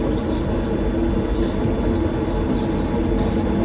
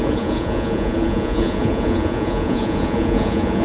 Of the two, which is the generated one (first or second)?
second